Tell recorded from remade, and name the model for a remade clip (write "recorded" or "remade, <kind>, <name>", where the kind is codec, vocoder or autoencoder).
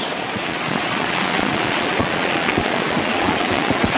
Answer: remade, vocoder, Vocos